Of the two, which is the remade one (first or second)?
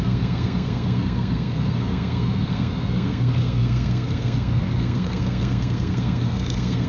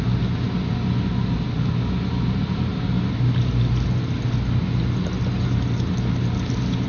first